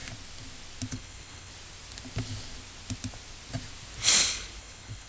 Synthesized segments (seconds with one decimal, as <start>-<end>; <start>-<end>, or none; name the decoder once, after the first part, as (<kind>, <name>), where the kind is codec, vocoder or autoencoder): 0.9-1.5 (codec, HILCodec); 4.6-5.1